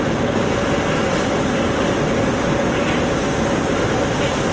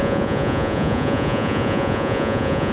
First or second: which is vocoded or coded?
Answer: second